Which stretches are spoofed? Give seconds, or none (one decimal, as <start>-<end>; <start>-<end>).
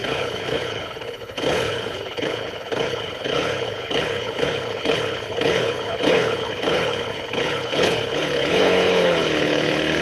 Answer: 0.0-10.0